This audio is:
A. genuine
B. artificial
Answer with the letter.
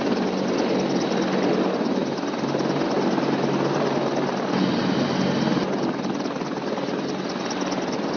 A